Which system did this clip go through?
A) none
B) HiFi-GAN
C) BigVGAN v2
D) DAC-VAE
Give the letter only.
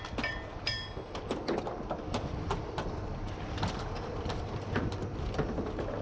A